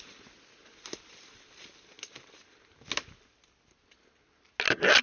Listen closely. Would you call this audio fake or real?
real